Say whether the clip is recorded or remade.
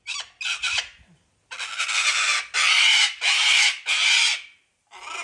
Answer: recorded